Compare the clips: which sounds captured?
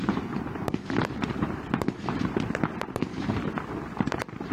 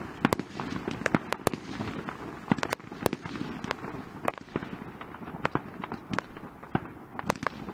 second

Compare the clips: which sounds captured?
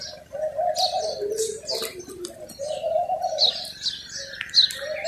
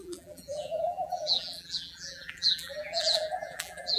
first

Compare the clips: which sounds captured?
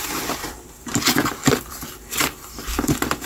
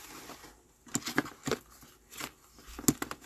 second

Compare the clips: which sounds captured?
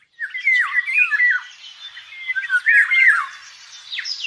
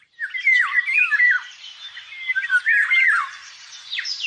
first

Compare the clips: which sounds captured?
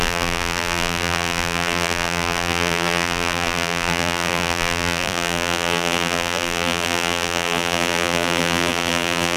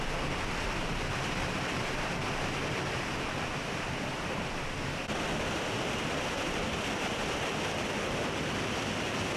second